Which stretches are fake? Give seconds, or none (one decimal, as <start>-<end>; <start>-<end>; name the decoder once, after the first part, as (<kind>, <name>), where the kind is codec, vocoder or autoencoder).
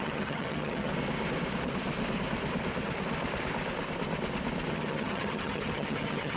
0.0-0.9 (vocoder, HiFi-GAN); 4.7-6.4